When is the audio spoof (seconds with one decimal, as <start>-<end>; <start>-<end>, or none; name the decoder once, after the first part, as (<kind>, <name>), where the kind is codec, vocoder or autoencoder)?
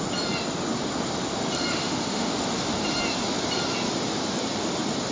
1.7-2.3 (autoencoder, DAC-VAE)